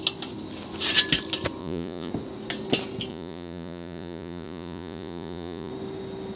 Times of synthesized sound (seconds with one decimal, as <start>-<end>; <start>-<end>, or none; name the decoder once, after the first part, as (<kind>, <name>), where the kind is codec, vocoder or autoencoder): 1.6-2.1 (vocoder, Vocos); 3.1-5.7